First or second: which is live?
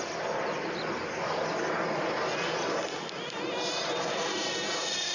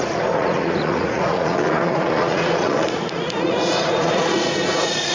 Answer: first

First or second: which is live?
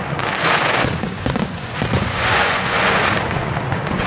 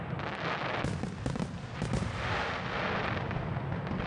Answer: second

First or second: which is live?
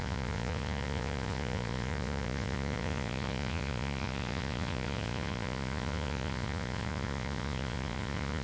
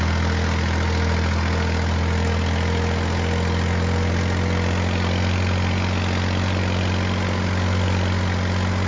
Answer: second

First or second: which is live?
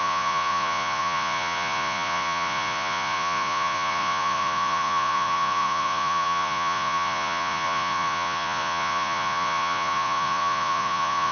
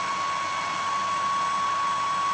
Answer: second